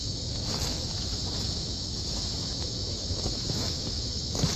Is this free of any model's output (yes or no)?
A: no